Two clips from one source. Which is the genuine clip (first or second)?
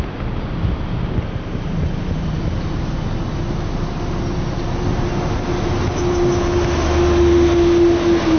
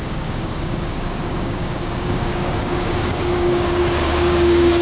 first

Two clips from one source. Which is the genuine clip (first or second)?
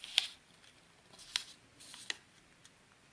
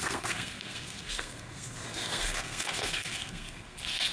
first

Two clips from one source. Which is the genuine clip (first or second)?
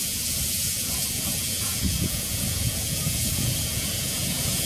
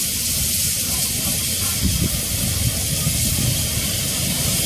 second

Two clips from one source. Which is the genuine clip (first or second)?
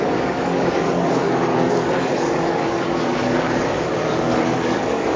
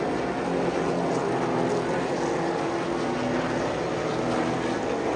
second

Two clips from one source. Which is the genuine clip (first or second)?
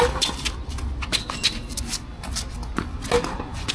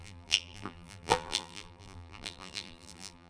first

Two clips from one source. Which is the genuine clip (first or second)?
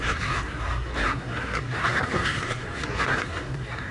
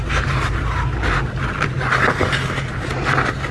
second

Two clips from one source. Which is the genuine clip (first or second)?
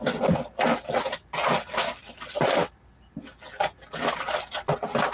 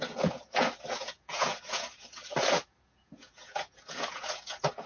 first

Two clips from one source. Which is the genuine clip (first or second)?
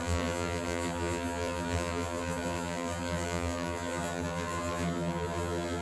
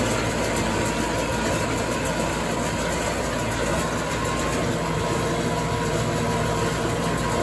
second